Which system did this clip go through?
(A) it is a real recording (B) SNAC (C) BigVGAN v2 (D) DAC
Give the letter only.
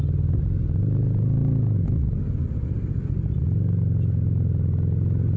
A